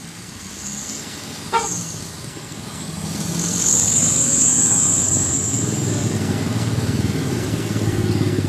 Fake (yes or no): yes